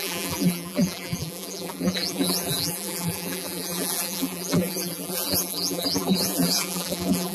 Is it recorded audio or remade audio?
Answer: remade